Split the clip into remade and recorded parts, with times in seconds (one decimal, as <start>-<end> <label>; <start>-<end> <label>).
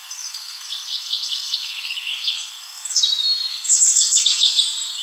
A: 0.0-3.0 remade; 3.0-3.5 recorded; 3.5-4.6 remade; 4.6-5.0 recorded